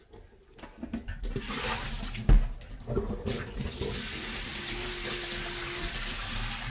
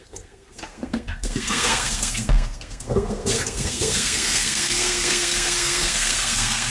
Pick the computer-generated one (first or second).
second